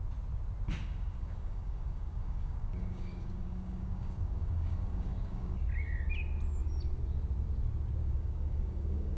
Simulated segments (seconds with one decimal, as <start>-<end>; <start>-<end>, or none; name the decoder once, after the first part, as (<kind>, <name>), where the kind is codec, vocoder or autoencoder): 0.8-5.6 (codec, DAC); 8.0-9.2